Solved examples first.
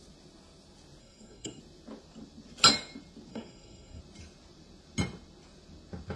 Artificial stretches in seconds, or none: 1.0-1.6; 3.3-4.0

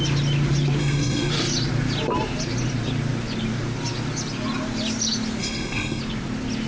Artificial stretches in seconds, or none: 0.8-1.3; 5.4-6.0

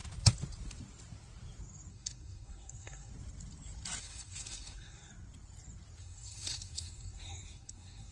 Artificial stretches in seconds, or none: 1.9-3.1; 4.0-5.1; 6.0-8.1

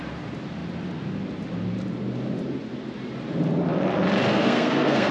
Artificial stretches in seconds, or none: 4.3-5.1